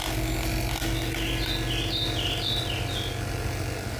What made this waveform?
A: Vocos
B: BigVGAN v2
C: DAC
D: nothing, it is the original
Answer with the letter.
D